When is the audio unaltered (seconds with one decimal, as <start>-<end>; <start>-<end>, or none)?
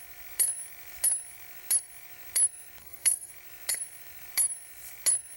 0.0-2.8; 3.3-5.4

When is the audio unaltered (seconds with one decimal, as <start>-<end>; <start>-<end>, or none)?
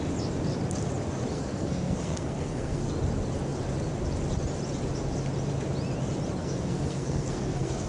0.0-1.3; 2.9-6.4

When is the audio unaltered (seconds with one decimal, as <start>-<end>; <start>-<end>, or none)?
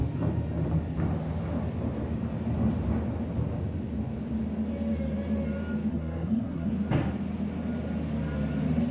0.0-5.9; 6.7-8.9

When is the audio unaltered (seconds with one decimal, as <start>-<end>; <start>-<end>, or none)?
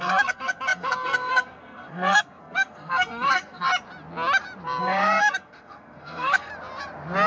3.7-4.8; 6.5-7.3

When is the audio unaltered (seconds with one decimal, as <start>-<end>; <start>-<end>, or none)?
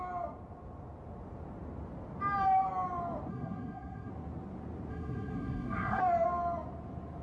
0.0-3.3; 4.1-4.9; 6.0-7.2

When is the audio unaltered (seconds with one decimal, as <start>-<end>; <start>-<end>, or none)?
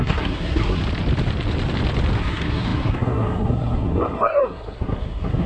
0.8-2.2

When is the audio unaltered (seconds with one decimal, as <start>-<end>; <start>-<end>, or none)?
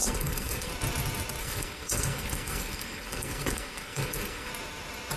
0.7-1.4; 4.5-5.2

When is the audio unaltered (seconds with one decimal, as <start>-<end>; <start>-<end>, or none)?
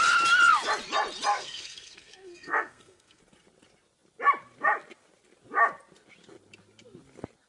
0.0-1.3; 3.2-7.5